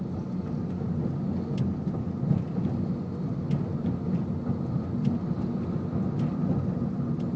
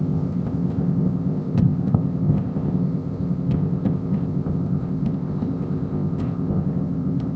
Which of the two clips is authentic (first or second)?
first